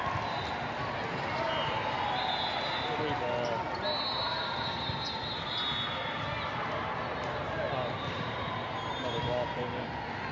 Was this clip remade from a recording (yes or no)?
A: no